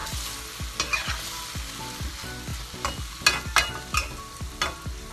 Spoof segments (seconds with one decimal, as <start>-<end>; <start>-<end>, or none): none